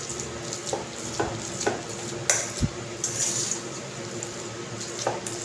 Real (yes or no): yes